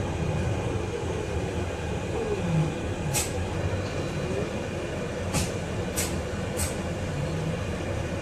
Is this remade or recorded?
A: recorded